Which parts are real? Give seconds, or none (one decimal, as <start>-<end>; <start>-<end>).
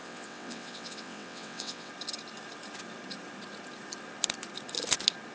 1.9-5.3